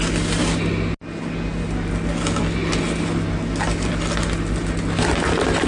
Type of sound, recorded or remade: recorded